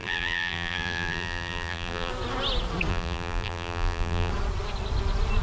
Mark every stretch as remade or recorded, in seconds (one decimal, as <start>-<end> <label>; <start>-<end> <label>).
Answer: 0.0-2.1 remade; 2.1-2.9 recorded; 2.9-4.3 remade; 4.3-5.4 recorded

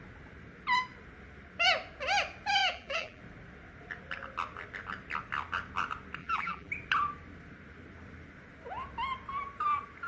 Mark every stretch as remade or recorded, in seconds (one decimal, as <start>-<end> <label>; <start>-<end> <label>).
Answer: 0.0-2.6 recorded; 2.6-3.2 remade; 3.2-6.2 recorded; 6.2-6.7 remade; 6.7-10.1 recorded

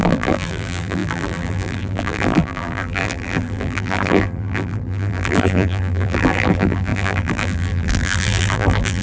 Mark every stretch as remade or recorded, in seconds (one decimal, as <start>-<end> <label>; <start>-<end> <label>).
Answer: 0.0-9.0 remade

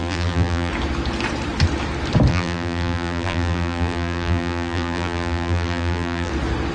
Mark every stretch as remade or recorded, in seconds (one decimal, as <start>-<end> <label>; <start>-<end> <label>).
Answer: 0.0-0.7 remade; 0.7-2.3 recorded; 2.3-6.3 remade; 6.3-6.7 recorded

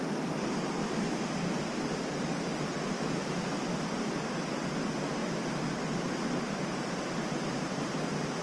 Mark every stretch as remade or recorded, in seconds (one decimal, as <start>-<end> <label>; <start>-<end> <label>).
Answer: 0.0-7.2 recorded; 7.2-8.4 remade

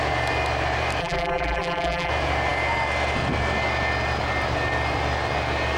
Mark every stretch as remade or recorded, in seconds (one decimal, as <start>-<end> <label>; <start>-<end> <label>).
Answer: 0.0-1.0 recorded; 1.0-2.1 remade; 2.1-5.8 recorded